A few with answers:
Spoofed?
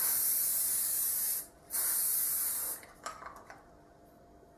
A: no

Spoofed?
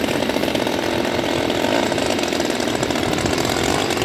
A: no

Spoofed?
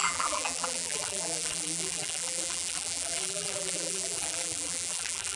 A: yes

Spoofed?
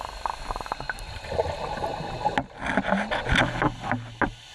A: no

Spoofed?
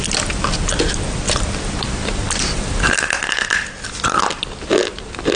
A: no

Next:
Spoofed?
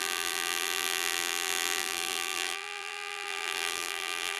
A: yes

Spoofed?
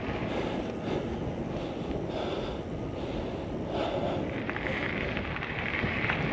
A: no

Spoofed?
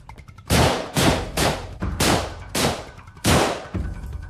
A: yes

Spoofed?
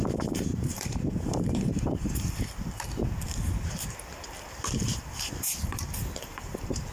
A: yes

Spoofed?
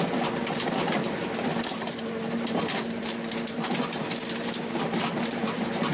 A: yes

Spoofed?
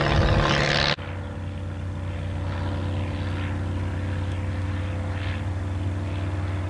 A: no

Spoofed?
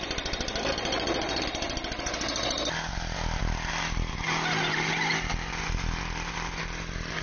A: no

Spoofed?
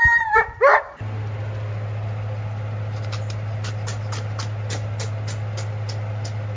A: no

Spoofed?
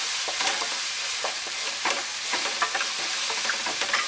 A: yes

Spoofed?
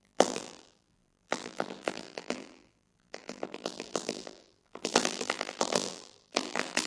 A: yes